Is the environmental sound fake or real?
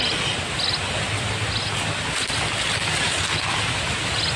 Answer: real